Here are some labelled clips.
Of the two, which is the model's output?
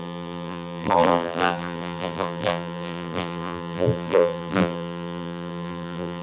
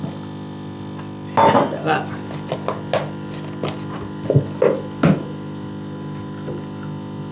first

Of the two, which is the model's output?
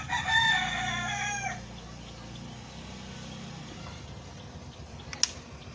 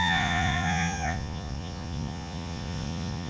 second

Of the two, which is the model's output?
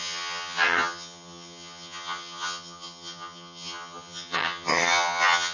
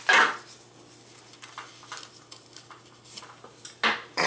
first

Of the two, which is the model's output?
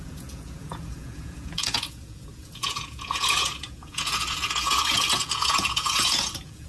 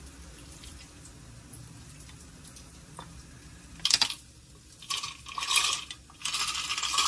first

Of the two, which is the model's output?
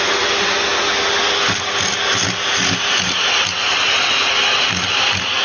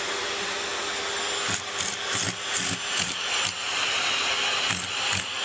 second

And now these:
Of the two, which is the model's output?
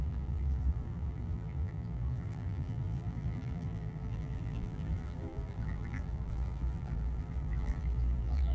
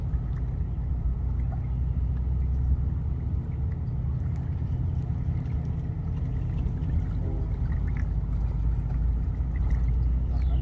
first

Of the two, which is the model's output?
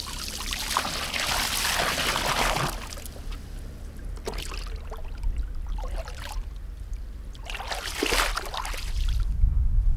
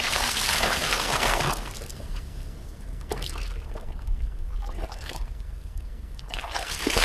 second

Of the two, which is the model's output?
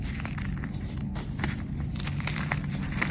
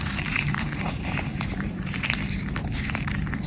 second